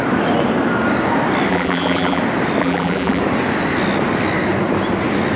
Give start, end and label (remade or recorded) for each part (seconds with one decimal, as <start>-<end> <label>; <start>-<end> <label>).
0.0-1.5 recorded; 1.5-2.2 remade; 2.2-2.6 recorded; 2.6-3.2 remade; 3.2-5.4 recorded